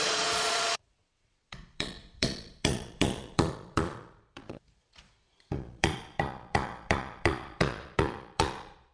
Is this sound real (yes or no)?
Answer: no